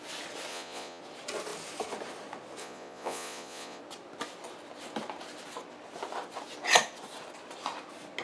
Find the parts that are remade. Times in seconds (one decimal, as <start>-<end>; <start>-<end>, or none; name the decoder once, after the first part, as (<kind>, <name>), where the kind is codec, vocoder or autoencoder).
0.5-1.0 (vocoder, Vocos); 2.6-3.8